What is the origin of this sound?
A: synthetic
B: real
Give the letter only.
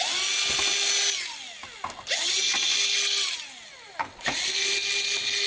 B